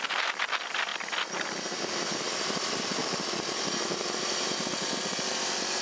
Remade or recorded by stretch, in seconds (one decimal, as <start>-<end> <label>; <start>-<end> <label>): 0.0-0.9 remade; 0.9-1.8 recorded; 1.8-3.0 remade; 3.0-4.2 recorded; 4.2-5.8 remade